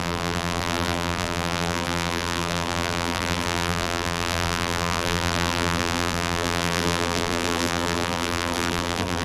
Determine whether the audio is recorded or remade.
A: remade